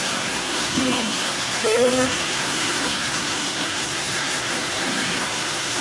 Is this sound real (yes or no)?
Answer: no